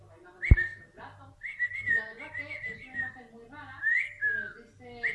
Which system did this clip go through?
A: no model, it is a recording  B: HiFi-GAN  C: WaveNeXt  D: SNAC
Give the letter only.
A